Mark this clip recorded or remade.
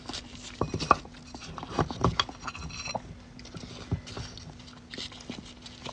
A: recorded